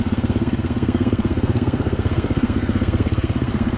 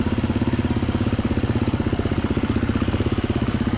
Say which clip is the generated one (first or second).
first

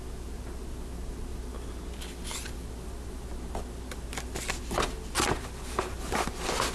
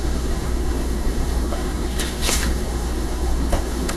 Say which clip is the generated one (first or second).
second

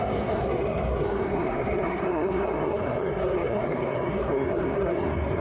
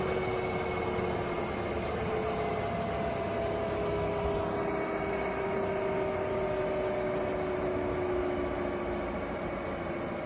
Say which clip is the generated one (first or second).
first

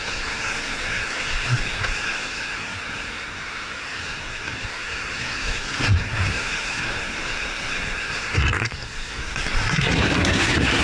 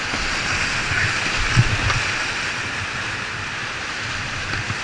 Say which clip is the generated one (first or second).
first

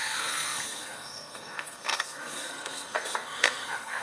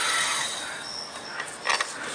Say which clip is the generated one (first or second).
first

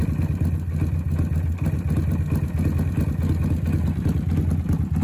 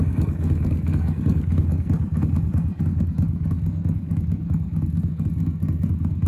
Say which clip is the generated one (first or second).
second